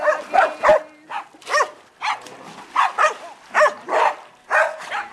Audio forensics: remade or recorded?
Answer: recorded